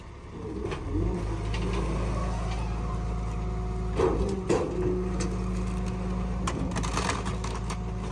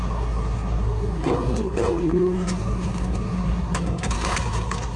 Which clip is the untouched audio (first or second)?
first